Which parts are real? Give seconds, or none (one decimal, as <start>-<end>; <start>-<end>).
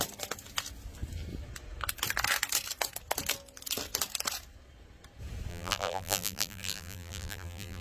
0.0-5.5